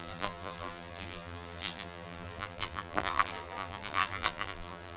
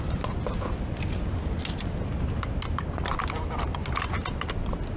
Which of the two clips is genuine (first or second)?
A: second